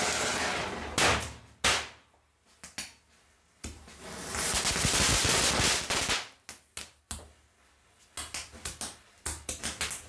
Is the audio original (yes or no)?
yes